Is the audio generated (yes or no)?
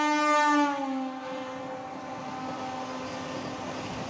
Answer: no